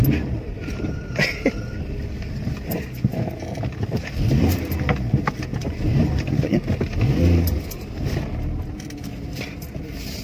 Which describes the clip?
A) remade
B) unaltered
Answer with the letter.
B